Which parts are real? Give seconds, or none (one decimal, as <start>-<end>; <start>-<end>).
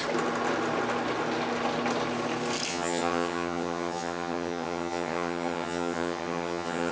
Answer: 0.0-2.7